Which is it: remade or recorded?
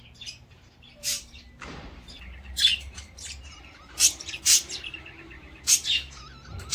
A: remade